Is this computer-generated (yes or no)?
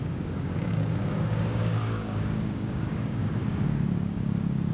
yes